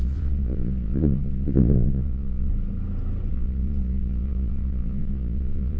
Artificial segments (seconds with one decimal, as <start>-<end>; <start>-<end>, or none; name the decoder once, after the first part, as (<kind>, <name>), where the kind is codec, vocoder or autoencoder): 0.0-2.5 (vocoder, Vocos); 3.3-5.8